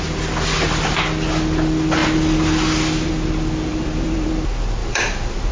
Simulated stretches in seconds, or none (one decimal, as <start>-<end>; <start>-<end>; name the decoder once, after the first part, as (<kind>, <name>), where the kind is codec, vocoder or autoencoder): 3.7-4.3 (vocoder, BigVGAN v2); 4.8-5.5

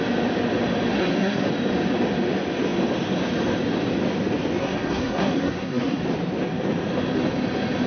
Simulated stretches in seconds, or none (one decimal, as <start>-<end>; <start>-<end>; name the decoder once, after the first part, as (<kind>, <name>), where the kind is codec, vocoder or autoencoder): 0.9-1.5 (codec, SNAC); 4.6-6.0

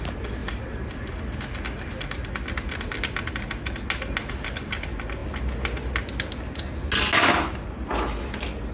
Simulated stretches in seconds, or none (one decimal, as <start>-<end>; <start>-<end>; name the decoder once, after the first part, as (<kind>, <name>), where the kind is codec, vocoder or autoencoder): none